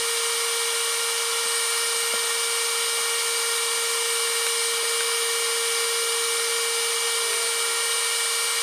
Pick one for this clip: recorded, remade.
recorded